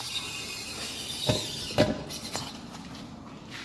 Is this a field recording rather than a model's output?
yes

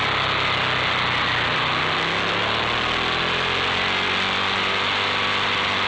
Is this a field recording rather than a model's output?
yes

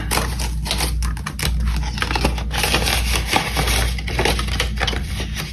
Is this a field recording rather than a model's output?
yes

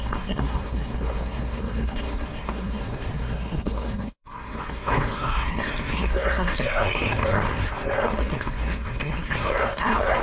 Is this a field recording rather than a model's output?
no